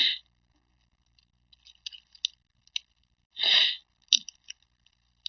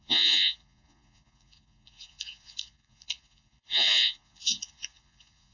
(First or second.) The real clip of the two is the first